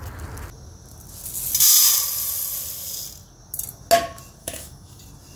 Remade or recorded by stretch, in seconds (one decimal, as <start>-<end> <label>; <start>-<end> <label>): 0.0-4.4 recorded; 4.4-5.0 remade; 5.0-5.4 recorded